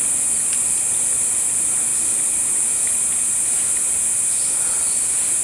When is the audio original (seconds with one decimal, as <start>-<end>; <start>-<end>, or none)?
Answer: 0.0-5.4